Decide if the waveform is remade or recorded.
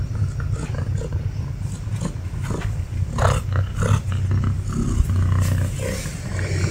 recorded